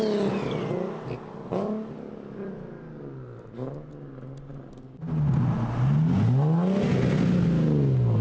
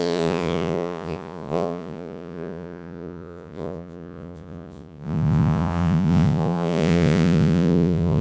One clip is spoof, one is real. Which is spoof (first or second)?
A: second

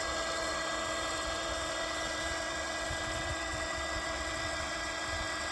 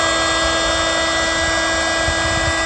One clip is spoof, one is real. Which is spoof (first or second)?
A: first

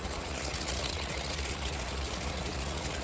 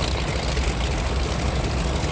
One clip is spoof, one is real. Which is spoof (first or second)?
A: first